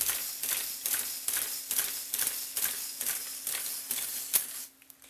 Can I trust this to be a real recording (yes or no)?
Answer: yes